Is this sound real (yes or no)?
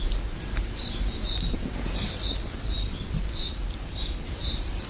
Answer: no